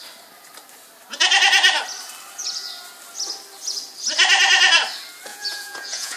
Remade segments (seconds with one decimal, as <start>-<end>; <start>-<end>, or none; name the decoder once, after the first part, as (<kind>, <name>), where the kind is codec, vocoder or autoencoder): 5.3-6.2 (vocoder, Vocos)